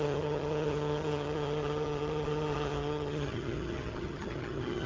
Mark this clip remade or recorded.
remade